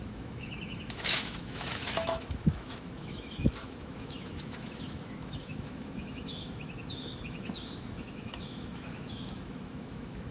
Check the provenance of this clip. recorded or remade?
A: remade